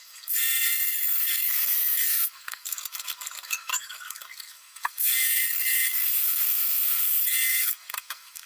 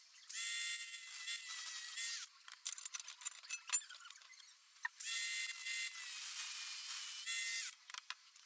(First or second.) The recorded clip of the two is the second